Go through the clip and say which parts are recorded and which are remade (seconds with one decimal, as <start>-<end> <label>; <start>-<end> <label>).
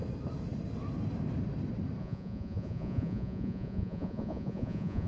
0.0-2.0 recorded; 2.0-5.1 remade